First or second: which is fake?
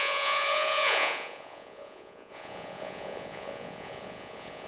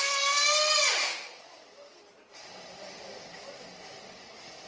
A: first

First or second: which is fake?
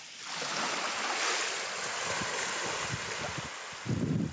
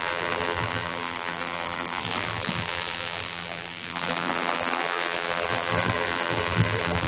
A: second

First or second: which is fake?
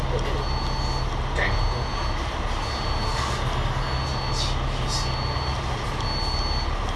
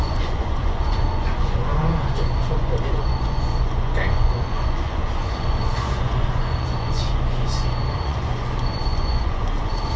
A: second